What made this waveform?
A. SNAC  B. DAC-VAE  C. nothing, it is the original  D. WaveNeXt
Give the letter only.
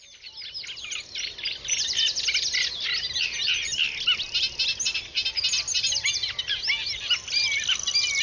C